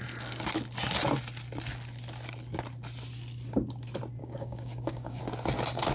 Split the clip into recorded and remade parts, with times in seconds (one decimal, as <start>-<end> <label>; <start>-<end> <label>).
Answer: 0.0-4.2 recorded; 4.2-5.2 remade; 5.2-5.9 recorded